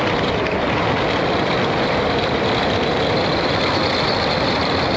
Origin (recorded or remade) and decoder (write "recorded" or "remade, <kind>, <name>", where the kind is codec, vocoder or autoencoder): remade, vocoder, BigVGAN v2